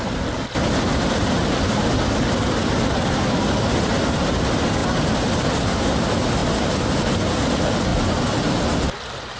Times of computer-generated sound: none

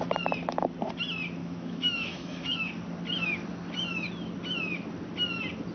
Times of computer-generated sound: 1.4-2.7

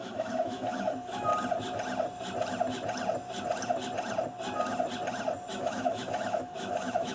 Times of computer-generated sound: 0.0-1.3; 5.5-7.1

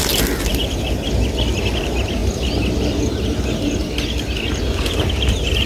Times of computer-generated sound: none

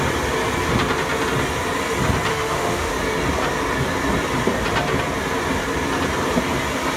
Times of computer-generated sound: 2.3-2.9

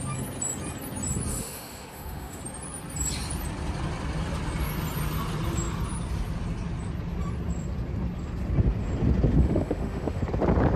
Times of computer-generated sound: 1.3-2.4; 9.4-10.2

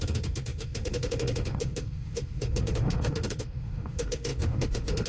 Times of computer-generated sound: 0.0-5.1

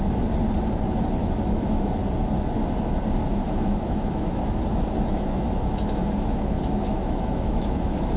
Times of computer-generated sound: 1.2-2.0; 3.2-8.2